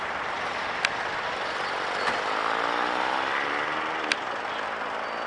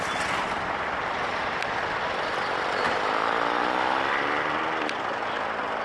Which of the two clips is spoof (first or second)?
second